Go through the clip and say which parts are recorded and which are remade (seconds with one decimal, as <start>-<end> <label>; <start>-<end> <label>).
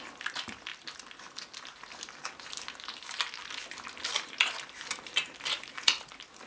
0.0-6.5 recorded